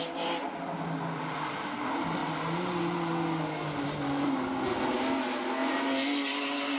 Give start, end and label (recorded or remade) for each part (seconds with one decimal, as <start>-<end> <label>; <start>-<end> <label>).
0.0-6.8 recorded